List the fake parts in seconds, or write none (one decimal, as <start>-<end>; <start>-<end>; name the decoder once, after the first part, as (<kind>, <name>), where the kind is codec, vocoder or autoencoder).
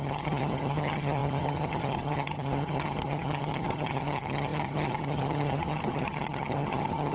0.0-7.1 (vocoder, HiFi-GAN)